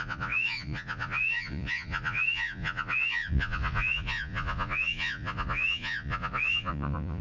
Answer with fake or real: fake